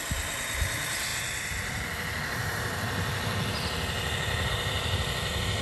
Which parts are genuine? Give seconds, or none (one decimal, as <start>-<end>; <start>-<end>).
none